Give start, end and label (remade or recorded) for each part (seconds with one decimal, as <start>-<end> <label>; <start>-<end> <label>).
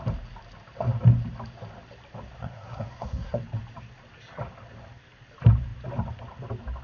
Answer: 0.0-2.4 recorded; 2.4-3.4 remade; 3.4-6.8 recorded